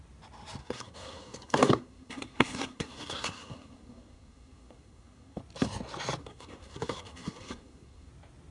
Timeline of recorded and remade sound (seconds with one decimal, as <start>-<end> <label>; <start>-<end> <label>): 0.0-0.6 recorded; 0.6-5.4 remade; 5.4-6.2 recorded; 6.2-8.1 remade; 8.1-8.5 recorded